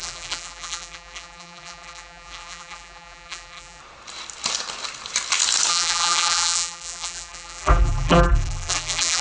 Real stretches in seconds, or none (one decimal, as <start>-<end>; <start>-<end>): 3.8-5.7